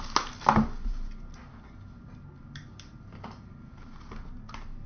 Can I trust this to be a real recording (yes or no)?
yes